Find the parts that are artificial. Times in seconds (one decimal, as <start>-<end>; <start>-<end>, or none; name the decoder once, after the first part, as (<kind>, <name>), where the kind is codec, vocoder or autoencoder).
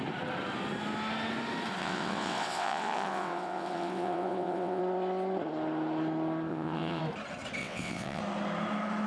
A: 1.8-4.8 (vocoder, WaveNeXt); 6.5-7.0; 7.6-8.2